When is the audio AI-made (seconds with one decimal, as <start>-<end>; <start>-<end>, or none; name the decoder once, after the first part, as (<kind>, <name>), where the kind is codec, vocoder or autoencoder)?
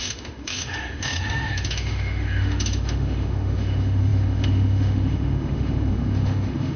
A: 0.0-6.8 (autoencoder, DAC-VAE)